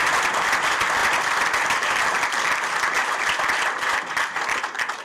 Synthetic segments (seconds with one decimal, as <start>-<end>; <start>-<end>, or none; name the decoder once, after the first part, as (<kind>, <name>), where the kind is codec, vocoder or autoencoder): 1.0-2.0 (vocoder, BigVGAN v2); 3.0-4.6